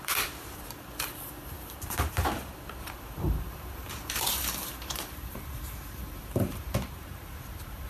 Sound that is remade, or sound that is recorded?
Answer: remade